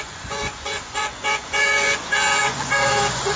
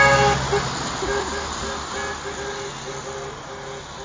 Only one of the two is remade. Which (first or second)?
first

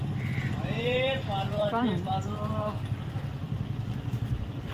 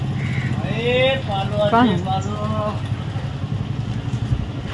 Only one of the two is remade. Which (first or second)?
first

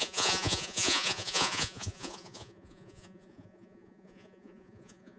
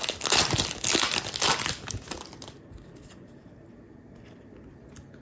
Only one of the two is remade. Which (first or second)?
first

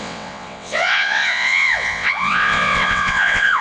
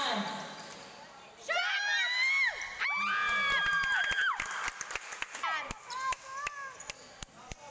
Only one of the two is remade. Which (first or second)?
first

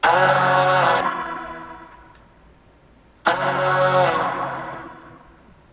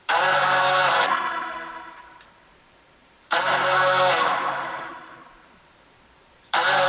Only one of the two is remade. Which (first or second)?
second